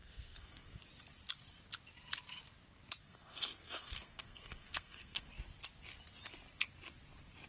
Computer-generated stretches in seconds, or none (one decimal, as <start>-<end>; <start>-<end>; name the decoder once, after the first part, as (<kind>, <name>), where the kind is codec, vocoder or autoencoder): 0.0-0.8 (codec, SNAC); 3.0-5.3